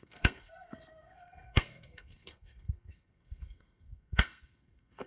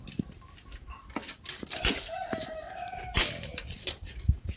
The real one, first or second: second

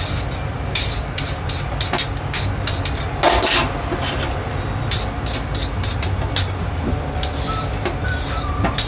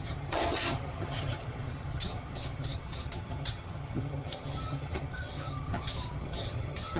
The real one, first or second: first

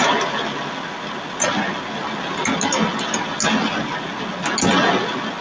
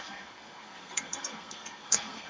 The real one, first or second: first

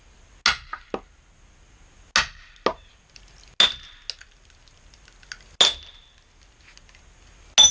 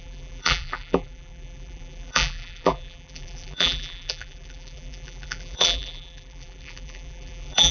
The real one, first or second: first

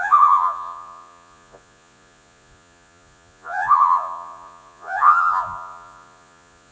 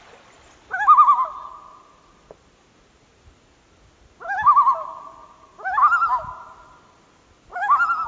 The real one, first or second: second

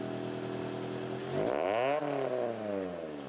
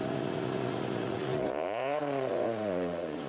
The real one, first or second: first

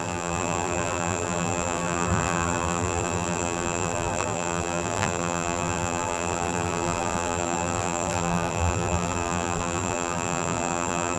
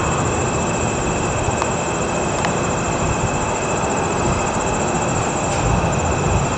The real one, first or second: second